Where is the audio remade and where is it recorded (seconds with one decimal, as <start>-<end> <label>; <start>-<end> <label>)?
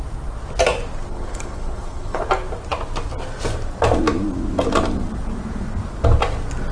0.0-1.1 recorded; 1.1-2.2 remade; 2.2-6.7 recorded